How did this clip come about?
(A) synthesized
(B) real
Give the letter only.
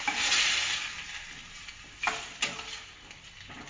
B